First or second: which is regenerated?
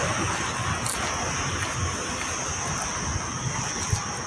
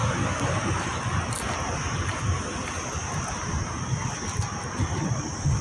second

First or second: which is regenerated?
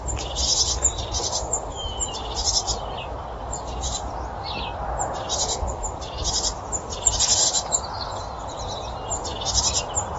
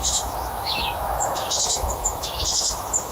second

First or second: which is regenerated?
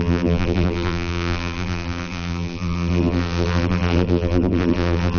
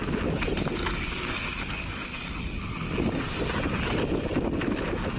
first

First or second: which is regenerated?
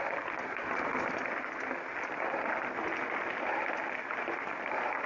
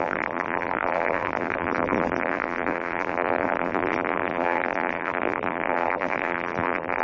second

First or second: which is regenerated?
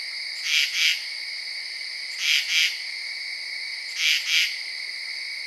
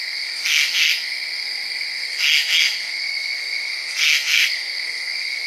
second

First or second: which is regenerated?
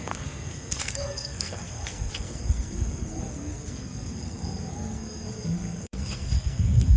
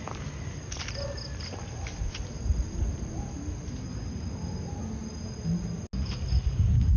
first